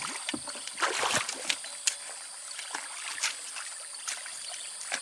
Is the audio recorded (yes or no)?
yes